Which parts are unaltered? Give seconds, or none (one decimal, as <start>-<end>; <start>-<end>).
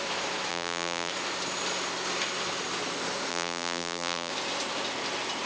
0.0-0.5; 1.1-3.3; 4.3-5.5